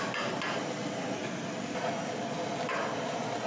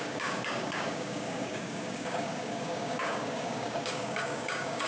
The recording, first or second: first